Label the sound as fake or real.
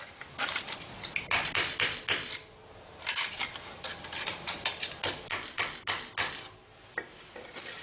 real